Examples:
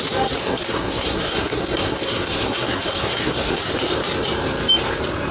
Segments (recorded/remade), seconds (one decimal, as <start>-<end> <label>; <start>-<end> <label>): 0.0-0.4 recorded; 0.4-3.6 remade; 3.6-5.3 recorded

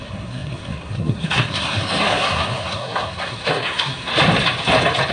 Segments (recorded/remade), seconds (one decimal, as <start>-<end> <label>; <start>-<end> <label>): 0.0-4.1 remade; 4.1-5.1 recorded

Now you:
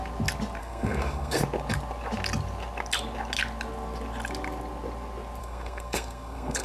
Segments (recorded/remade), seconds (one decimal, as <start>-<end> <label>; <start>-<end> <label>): 0.0-0.6 recorded; 0.6-1.4 remade; 1.4-5.4 recorded; 5.4-6.6 remade